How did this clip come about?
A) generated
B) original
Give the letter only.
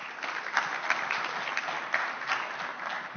B